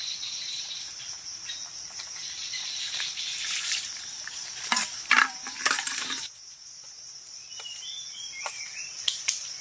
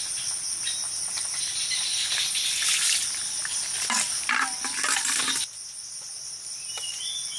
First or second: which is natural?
second